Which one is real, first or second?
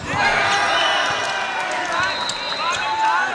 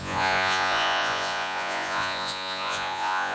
first